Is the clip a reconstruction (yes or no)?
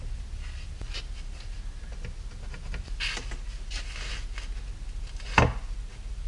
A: no